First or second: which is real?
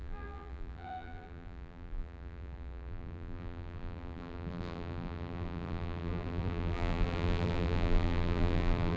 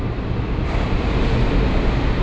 second